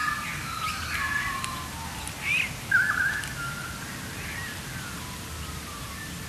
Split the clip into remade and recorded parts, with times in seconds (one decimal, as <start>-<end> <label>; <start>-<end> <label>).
0.0-6.3 recorded